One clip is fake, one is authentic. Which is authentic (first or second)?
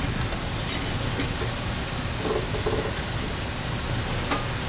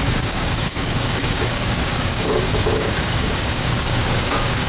first